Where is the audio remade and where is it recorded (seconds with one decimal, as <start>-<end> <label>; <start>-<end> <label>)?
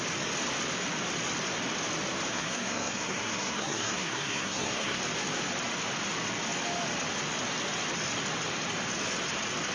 0.0-2.3 recorded; 2.3-5.0 remade; 5.0-9.7 recorded